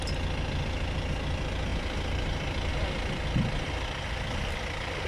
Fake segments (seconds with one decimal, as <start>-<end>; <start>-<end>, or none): none